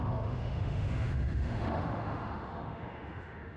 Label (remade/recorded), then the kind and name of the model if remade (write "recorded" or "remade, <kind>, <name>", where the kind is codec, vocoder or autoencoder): remade, autoencoder, DAC-VAE